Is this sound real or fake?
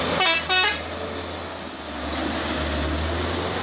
real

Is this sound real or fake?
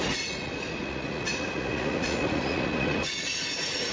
fake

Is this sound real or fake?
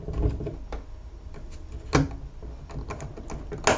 real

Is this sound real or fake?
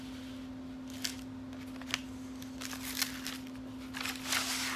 real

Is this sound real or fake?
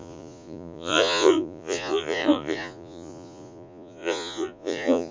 fake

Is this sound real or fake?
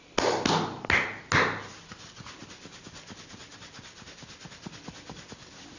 real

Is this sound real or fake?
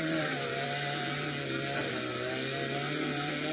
fake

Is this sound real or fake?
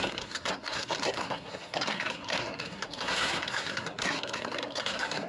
fake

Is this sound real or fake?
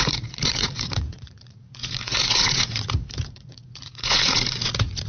fake